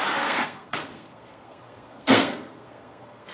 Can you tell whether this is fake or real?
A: fake